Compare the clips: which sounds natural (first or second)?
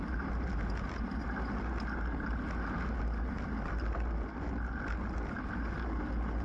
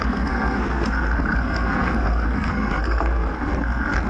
first